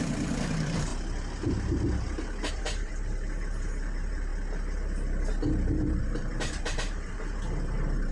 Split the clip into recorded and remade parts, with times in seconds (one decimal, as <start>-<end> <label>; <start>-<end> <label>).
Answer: 0.0-0.9 remade; 0.9-2.5 recorded; 2.5-4.3 remade; 4.3-6.0 recorded; 6.0-8.1 remade